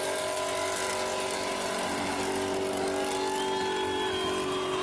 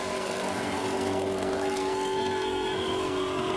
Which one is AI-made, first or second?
second